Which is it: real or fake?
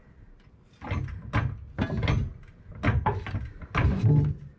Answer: real